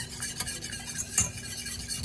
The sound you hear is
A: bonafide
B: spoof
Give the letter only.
A